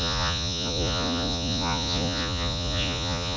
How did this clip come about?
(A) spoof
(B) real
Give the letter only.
A